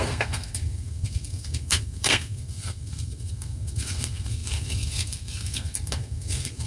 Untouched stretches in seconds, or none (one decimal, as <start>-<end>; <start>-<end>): none

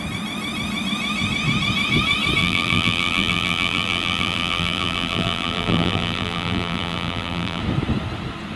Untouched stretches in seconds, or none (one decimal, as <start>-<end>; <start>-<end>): 0.0-2.4; 7.6-8.6